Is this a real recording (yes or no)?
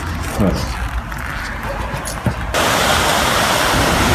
yes